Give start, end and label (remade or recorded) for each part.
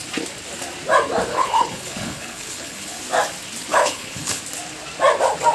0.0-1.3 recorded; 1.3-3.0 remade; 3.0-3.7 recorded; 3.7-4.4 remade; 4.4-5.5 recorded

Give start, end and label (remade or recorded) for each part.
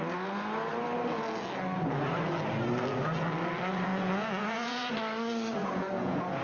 0.0-3.9 recorded; 3.9-4.9 remade; 4.9-5.6 recorded; 5.6-6.4 remade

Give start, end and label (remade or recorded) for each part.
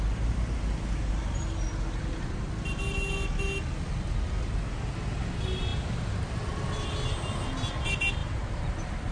0.0-5.7 recorded; 5.7-6.5 remade; 6.5-8.2 recorded; 8.2-9.1 remade